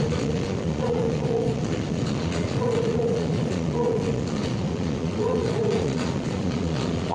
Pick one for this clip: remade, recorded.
remade